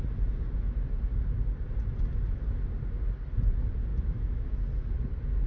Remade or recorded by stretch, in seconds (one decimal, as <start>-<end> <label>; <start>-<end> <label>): 0.0-3.9 recorded; 3.9-4.6 remade; 4.6-5.5 recorded